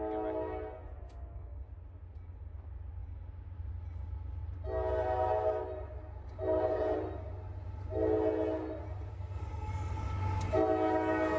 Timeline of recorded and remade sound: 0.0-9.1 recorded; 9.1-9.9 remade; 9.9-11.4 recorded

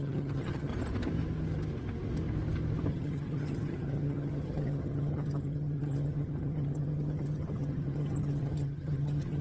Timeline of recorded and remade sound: 0.0-0.7 remade; 0.7-2.9 recorded; 2.9-9.4 remade

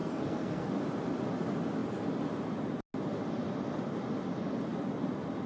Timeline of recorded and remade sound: 0.0-0.7 remade; 0.7-5.5 recorded

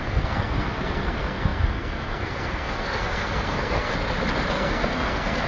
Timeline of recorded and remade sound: 0.0-3.9 remade; 3.9-4.5 recorded; 4.5-5.5 remade